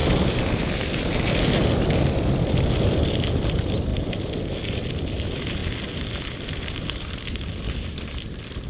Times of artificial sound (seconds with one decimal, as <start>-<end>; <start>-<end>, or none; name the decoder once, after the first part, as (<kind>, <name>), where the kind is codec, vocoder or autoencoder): 0.0-5.6 (vocoder, BigVGAN v2); 6.2-8.7